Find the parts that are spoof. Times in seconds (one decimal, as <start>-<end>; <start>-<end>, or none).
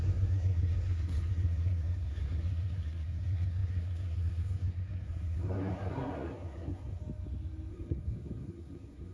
0.0-7.0; 7.7-9.1